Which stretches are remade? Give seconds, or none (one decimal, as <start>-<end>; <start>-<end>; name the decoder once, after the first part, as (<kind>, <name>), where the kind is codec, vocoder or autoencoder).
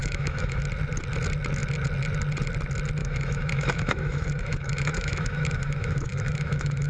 0.0-0.6 (autoencoder, DAC-VAE); 3.0-6.9